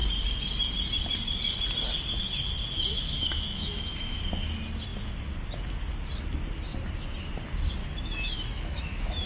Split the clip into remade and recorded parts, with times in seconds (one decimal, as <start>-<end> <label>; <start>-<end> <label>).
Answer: 0.0-2.9 recorded; 2.9-4.2 remade; 4.2-7.8 recorded; 7.8-9.3 remade